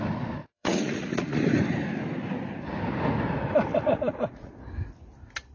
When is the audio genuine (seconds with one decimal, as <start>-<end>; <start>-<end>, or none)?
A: 0.0-0.4; 1.5-3.7; 4.5-5.5